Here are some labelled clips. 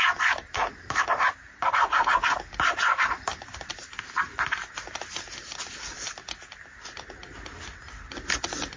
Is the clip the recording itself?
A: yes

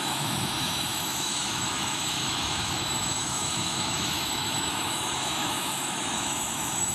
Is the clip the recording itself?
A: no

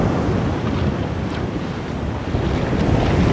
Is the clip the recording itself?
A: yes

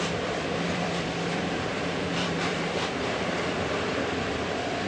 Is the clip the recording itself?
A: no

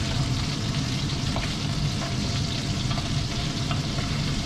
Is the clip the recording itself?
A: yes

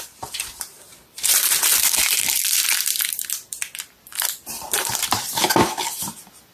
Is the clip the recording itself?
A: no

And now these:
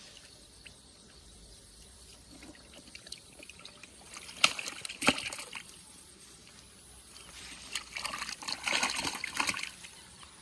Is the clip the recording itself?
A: no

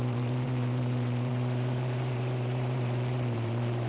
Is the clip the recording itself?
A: no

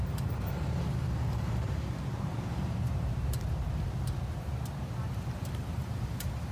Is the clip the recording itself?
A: no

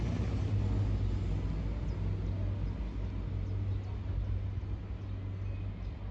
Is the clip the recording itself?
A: yes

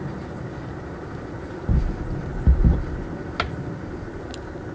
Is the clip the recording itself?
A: yes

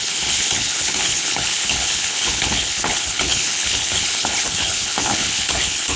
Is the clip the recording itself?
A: no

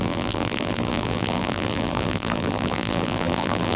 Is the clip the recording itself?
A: no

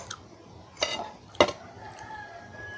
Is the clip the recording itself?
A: yes